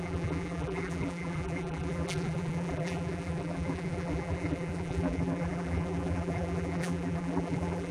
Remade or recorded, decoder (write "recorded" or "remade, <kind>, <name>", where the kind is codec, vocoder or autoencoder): remade, vocoder, BigVGAN v2